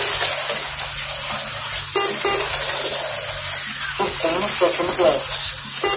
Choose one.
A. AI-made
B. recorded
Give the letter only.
B